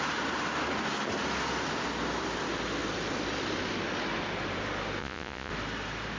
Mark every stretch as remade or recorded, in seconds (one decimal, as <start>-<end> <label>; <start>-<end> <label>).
0.0-5.0 recorded; 5.0-5.5 remade; 5.5-6.2 recorded